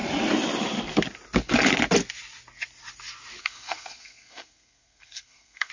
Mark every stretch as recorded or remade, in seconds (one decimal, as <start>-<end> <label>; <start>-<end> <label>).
0.0-3.4 recorded; 3.4-5.7 remade